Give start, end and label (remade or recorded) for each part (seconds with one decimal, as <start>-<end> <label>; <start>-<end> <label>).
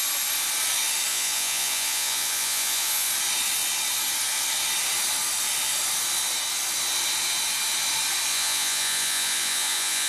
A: 0.0-1.1 recorded; 1.1-3.1 remade; 3.1-8.3 recorded; 8.3-10.1 remade